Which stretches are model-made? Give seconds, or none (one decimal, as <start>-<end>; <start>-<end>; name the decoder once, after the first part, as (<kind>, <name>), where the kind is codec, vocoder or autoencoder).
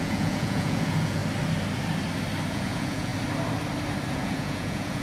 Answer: 0.0-1.2 (vocoder, Vocos); 2.5-3.1; 4.1-5.0